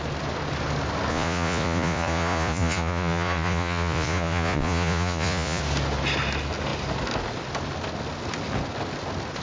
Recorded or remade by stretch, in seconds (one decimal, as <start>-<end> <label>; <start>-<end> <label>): 0.0-1.1 recorded; 1.1-5.6 remade; 5.6-9.4 recorded